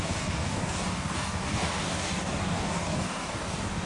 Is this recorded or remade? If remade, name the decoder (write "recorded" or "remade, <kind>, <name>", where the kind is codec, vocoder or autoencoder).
remade, codec, DAC